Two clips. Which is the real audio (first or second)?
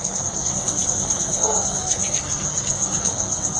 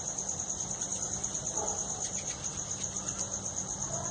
second